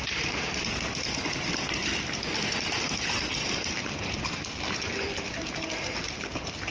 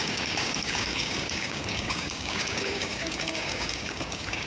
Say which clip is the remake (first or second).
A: second